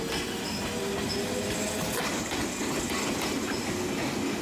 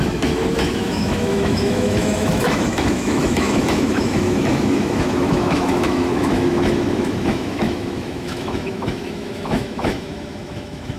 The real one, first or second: first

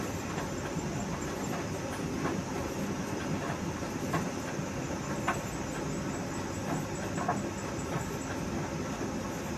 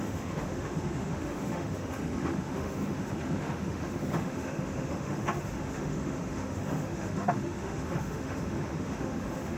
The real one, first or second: first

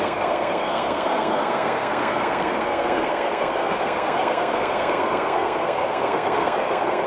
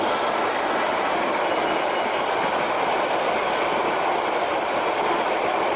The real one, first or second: second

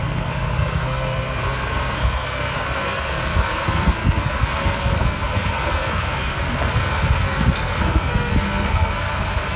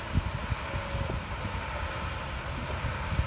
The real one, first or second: second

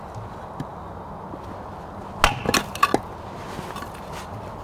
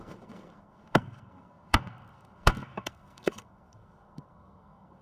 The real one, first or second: first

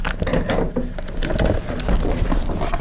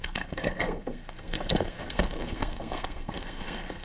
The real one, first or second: first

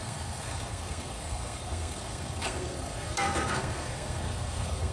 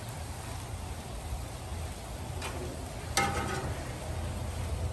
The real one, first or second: second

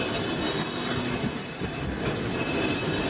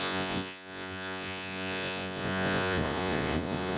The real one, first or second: first